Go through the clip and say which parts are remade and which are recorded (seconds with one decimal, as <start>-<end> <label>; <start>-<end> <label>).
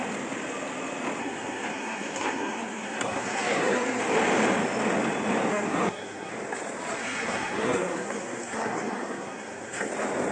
0.0-1.2 recorded; 1.2-4.0 remade; 4.0-5.5 recorded; 5.5-6.3 remade; 6.3-7.0 recorded; 7.0-9.9 remade; 9.9-10.3 recorded